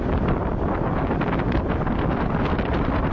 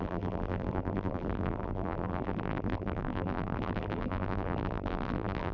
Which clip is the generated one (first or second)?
second